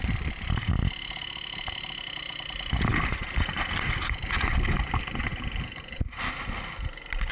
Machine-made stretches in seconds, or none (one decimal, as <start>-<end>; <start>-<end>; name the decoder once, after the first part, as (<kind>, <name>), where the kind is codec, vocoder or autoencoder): none